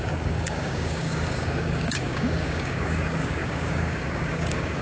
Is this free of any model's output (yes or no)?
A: no